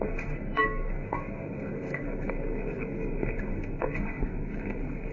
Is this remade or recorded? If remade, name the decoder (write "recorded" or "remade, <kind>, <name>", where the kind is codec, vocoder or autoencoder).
remade, codec, SNAC